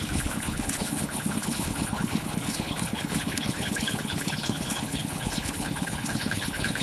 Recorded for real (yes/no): no